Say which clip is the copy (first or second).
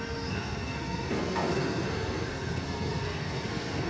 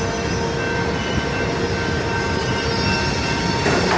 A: first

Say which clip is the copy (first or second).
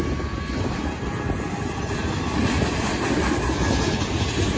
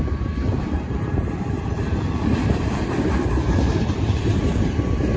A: second